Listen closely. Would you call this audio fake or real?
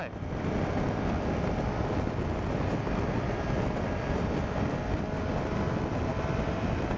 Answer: real